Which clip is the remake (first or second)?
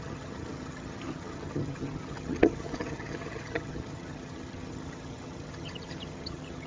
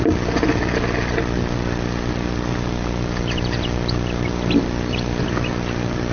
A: first